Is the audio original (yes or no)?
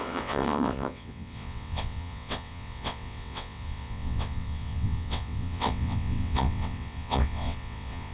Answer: no